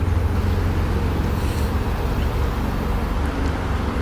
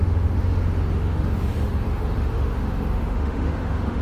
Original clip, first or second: first